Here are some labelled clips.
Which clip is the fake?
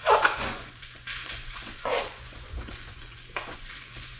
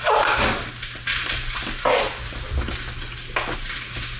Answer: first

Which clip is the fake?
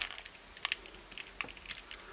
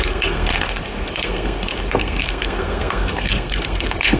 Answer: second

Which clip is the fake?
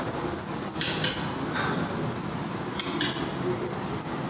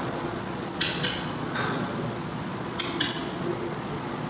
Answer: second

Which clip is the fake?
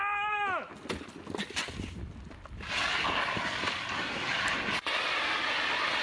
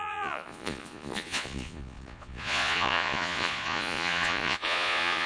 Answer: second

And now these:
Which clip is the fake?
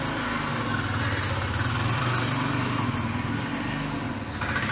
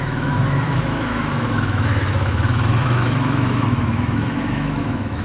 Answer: second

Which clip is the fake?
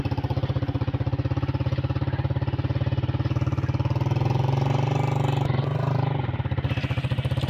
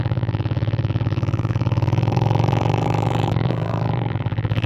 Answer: second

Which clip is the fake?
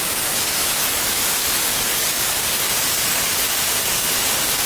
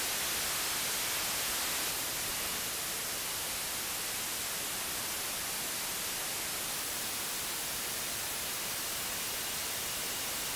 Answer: first